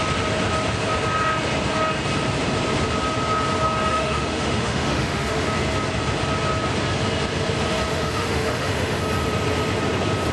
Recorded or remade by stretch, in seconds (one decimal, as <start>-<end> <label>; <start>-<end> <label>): 0.0-3.9 recorded; 3.9-5.5 remade; 5.5-7.9 recorded; 7.9-9.0 remade; 9.0-10.3 recorded